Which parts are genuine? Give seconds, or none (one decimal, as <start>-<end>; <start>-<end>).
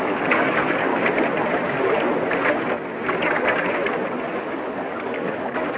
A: 0.9-4.4